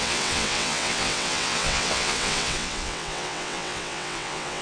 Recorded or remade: remade